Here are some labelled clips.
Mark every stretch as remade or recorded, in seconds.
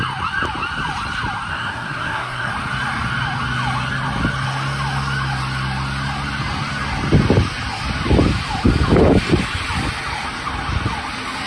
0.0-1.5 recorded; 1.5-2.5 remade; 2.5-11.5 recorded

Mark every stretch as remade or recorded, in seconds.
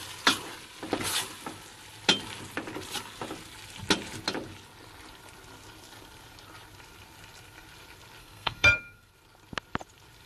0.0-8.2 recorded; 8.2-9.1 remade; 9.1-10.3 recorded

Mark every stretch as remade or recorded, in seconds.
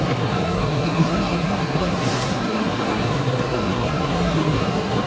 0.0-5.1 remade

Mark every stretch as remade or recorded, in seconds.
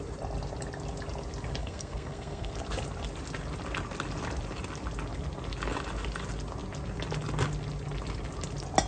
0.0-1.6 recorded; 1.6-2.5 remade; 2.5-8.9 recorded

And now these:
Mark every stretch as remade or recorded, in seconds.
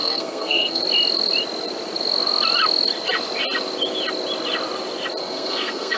0.0-0.8 remade; 0.8-5.2 recorded; 5.2-6.0 remade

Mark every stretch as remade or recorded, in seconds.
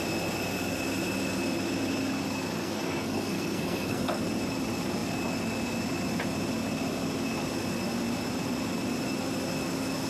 0.0-2.6 recorded; 2.6-4.2 remade; 4.2-10.1 recorded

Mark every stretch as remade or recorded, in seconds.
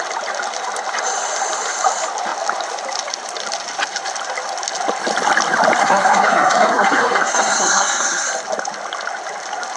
0.0-5.8 recorded; 5.8-8.3 remade; 8.3-9.8 recorded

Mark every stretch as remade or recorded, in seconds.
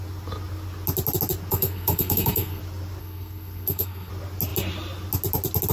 0.0-1.5 recorded; 1.5-2.6 remade; 2.6-3.0 recorded; 3.0-4.1 remade; 4.1-5.7 recorded